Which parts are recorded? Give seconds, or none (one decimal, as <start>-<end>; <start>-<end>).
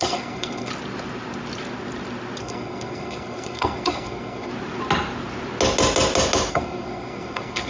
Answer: 0.7-2.4; 4.5-6.5